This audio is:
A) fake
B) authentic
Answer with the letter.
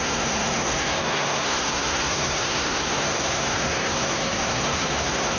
A